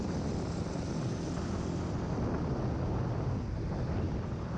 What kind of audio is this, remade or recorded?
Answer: recorded